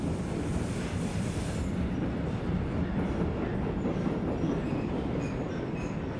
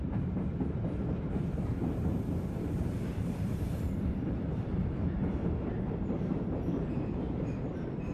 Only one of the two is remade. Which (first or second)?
second